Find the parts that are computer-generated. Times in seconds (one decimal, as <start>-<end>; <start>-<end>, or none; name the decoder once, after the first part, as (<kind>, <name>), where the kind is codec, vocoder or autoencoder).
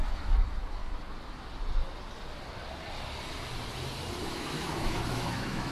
0.0-0.8 (autoencoder, DAC-VAE); 4.2-5.7